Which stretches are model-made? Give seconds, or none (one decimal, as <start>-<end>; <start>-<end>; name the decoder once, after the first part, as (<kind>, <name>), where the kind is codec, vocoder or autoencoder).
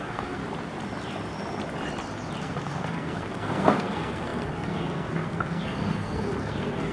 0.0-0.4 (codec, SNAC); 2.4-6.9